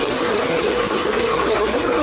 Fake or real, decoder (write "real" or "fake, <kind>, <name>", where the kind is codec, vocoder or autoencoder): fake, codec, SNAC